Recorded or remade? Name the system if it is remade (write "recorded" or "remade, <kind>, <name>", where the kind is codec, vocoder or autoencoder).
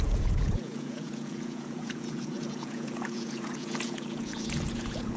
remade, vocoder, Vocos